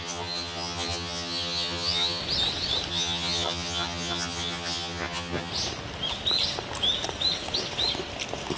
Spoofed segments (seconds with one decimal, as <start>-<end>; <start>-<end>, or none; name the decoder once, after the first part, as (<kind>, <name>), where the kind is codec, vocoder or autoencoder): 0.0-2.2 (vocoder, HiFi-GAN); 2.9-5.5